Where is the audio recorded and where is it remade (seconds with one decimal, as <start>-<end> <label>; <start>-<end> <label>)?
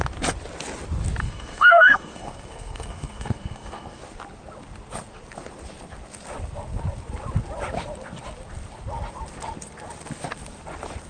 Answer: 0.0-1.2 recorded; 1.2-4.0 remade; 4.0-11.1 recorded